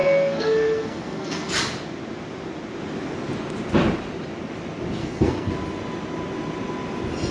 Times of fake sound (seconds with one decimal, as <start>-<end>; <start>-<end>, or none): 0.0-1.5; 5.0-5.5